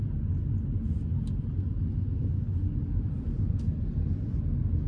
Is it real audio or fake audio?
real